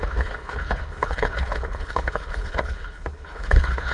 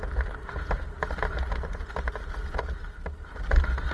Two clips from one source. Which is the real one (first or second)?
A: second